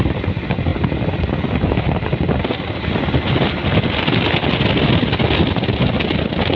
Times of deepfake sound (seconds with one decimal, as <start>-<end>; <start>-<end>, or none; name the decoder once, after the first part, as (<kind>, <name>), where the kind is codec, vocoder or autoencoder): none